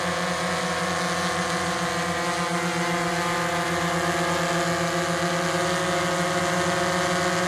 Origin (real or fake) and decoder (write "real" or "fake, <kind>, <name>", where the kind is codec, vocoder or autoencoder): real